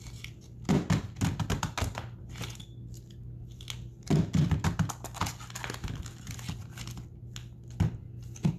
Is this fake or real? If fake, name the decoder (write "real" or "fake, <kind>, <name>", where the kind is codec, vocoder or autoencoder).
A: real